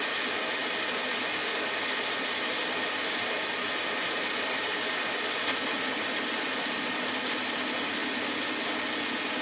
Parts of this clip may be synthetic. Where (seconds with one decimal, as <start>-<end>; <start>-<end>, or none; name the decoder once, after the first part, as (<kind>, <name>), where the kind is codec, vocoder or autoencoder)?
none